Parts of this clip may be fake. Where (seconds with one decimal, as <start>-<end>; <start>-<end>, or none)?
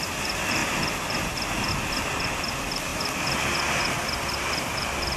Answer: none